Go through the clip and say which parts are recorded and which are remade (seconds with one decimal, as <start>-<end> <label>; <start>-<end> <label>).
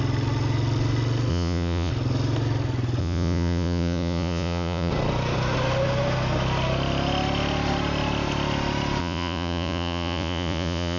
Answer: 0.0-1.3 recorded; 1.3-1.9 remade; 1.9-3.0 recorded; 3.0-4.9 remade; 4.9-9.0 recorded; 9.0-11.0 remade